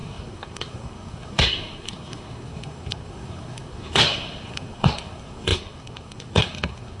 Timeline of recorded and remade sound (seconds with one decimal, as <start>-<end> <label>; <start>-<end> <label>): 0.0-7.0 remade